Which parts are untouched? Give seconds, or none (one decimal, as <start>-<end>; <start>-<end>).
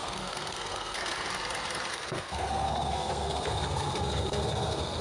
1.3-1.9